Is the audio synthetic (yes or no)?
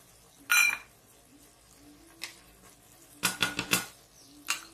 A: no